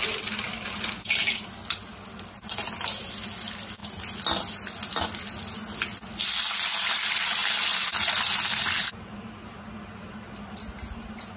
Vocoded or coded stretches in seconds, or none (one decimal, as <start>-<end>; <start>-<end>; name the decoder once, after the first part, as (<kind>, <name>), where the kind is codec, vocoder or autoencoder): none